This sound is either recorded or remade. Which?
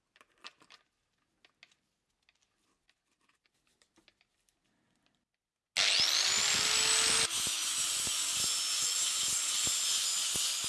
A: recorded